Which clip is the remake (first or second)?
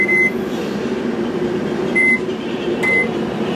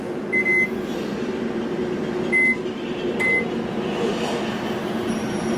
first